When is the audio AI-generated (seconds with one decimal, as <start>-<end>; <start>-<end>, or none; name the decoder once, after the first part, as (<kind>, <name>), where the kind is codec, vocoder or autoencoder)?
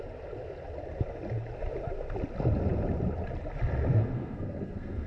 3.9-5.1 (codec, SNAC)